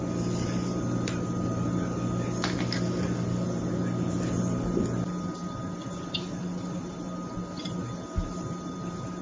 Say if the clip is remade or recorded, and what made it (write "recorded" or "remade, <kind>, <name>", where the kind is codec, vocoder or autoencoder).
recorded